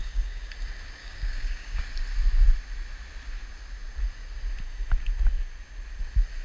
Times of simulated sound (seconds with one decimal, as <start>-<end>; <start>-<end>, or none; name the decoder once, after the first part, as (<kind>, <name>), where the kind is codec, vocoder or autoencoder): 0.0-0.5 (codec, DAC); 1.0-1.8